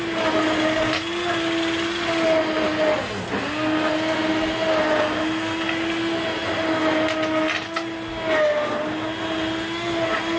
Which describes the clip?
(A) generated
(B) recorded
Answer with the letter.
B